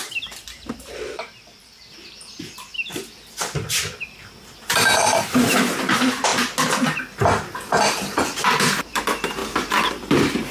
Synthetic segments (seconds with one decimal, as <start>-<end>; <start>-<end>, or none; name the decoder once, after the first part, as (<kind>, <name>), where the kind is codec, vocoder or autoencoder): 0.0-6.3 (vocoder, BigVGAN v2); 8.9-9.4; 9.9-10.5